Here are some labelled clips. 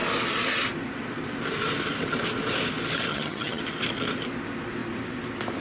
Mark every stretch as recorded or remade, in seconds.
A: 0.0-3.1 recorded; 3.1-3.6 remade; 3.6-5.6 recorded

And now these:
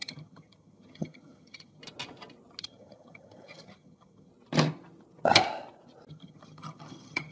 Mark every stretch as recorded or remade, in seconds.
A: 0.0-1.8 remade; 1.8-2.6 recorded; 2.6-4.3 remade; 4.3-6.1 recorded; 6.1-7.3 remade

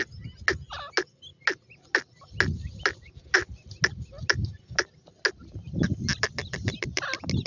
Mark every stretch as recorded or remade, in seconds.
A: 0.0-7.5 recorded

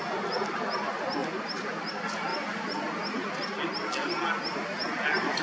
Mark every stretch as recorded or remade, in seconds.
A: 0.0-5.4 recorded

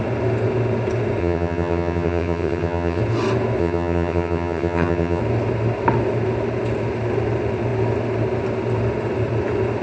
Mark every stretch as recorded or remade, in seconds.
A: 0.0-1.2 recorded; 1.2-3.0 remade; 3.0-3.6 recorded; 3.6-5.2 remade; 5.2-9.8 recorded